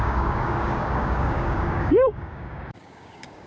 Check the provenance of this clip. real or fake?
fake